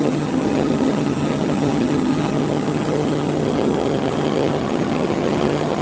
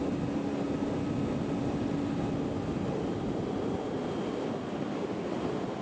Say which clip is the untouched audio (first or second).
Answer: second